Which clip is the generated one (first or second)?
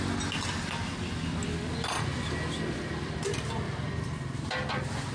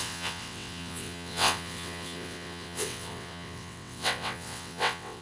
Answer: second